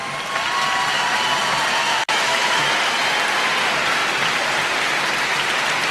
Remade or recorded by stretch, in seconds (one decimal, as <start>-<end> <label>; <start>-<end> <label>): 0.0-1.9 recorded; 1.9-2.9 remade; 2.9-5.9 recorded